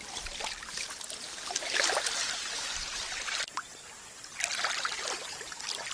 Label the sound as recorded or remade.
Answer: recorded